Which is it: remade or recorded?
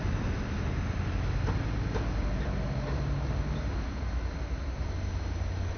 recorded